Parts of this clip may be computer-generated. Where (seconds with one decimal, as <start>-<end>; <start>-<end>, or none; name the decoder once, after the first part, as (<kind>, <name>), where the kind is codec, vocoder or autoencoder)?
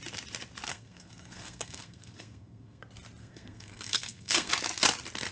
0.7-2.8 (codec, SNAC); 3.2-4.5